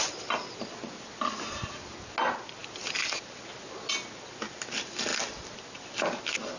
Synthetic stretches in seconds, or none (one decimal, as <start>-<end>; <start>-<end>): none